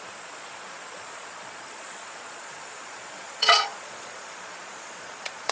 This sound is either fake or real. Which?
fake